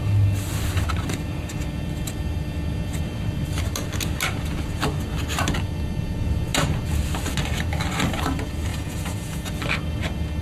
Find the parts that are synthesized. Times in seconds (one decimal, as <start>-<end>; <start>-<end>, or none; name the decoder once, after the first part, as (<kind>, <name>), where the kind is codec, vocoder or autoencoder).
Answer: 8.7-9.5 (vocoder, Vocos)